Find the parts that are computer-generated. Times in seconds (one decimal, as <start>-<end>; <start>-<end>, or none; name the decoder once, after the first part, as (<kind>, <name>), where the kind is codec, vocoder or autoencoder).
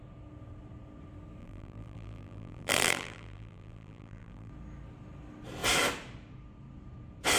1.4-4.5 (vocoder, BigVGAN v2)